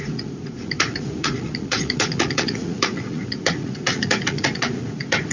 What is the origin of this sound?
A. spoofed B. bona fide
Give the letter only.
A